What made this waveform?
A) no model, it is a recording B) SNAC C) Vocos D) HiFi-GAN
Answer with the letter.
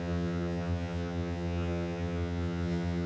D